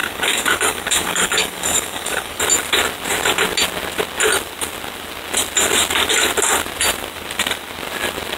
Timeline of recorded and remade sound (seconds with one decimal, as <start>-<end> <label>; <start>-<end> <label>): 0.0-2.4 remade; 2.4-8.4 recorded